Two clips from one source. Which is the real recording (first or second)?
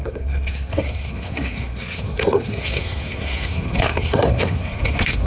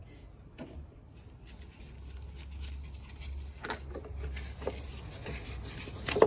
second